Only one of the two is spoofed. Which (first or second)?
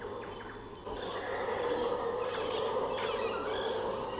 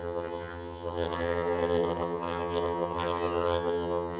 second